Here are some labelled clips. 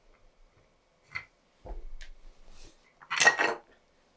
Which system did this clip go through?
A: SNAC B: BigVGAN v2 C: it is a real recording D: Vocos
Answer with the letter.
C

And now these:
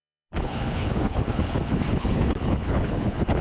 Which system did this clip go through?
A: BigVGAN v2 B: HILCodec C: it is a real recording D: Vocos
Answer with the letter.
B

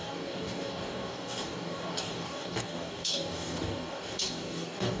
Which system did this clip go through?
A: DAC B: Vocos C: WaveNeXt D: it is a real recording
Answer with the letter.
A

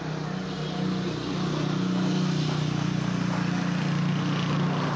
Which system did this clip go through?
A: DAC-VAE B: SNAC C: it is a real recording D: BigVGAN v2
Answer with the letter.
C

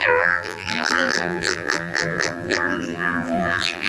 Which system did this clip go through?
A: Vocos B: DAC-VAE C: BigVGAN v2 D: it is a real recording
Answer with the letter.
C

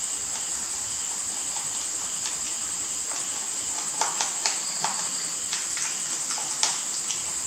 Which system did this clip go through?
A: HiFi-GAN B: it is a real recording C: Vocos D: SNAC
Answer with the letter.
B